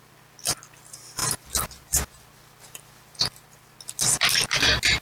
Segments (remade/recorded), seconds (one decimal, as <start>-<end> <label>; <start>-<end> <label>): 0.0-5.0 recorded